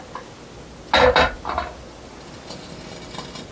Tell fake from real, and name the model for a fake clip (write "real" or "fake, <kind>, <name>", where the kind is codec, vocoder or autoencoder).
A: real